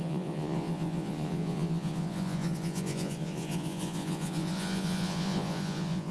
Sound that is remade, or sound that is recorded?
remade